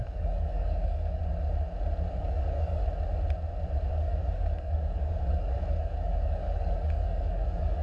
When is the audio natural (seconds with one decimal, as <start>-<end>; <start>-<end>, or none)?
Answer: 1.2-2.1; 2.8-3.9